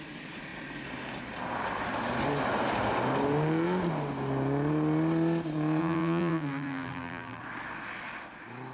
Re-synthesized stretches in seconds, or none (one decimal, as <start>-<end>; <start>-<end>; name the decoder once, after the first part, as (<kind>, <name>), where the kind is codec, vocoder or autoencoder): 5.8-7.4 (vocoder, BigVGAN v2)